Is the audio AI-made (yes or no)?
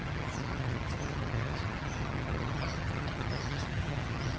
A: yes